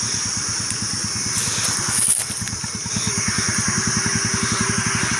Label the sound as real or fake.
real